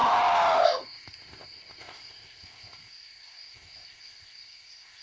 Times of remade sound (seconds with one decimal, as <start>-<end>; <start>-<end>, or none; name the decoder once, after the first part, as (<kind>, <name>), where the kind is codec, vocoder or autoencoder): 0.6-5.0 (codec, ZipCodec)

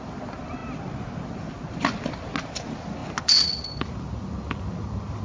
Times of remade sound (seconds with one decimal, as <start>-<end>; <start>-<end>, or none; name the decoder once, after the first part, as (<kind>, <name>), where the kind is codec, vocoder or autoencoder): none

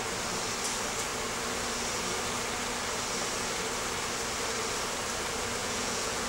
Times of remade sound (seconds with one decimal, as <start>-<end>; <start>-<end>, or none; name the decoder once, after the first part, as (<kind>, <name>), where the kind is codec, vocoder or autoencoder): 5.6-6.3 (vocoder, Vocos)

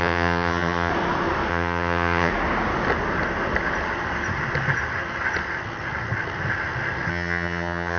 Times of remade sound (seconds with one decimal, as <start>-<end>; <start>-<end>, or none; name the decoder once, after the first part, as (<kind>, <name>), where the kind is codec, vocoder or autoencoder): 0.0-0.9 (vocoder, HiFi-GAN); 1.5-2.3; 7.1-8.0